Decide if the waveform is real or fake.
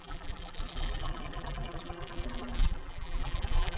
fake